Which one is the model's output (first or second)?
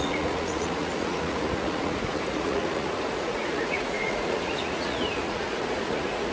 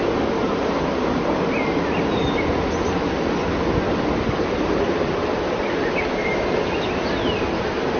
first